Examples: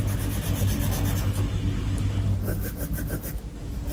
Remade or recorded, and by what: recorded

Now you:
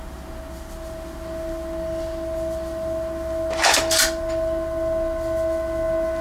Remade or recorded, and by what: recorded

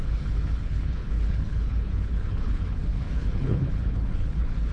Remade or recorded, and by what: remade, codec, HILCodec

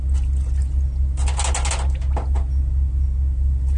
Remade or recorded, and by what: recorded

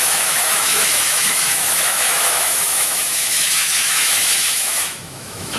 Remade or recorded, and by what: remade, autoencoder, DAC-VAE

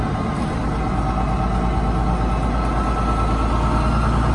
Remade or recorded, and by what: recorded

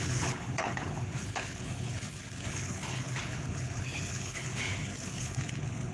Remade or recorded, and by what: remade, codec, HILCodec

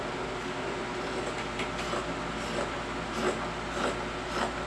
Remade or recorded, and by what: recorded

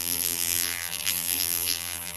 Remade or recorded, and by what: remade, vocoder, BigVGAN v2